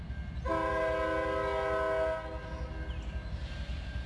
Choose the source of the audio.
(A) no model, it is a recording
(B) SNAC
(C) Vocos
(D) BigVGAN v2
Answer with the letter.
A